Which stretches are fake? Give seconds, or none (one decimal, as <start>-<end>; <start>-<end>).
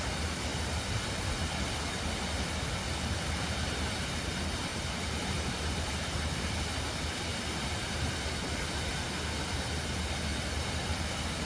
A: 4.7-6.5; 7.3-8.5; 10.3-10.9